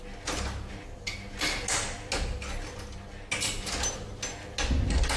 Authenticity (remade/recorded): recorded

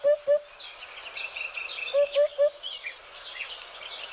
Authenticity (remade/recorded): recorded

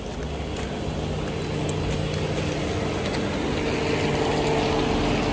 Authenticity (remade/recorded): recorded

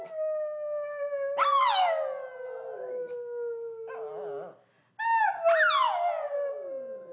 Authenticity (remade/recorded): recorded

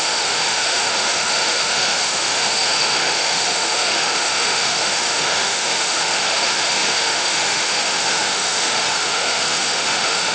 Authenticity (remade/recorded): remade